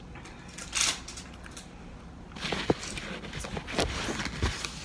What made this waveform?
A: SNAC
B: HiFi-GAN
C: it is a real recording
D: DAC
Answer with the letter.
C